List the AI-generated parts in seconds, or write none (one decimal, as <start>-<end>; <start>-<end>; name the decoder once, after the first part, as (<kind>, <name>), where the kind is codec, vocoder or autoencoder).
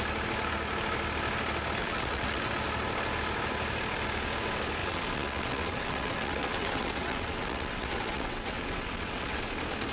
1.8-2.5 (vocoder, WaveNeXt); 4.8-9.4